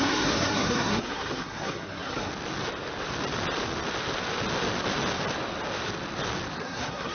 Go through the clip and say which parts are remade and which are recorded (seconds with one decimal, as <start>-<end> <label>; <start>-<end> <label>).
0.0-2.3 remade; 2.3-6.6 recorded; 6.6-7.1 remade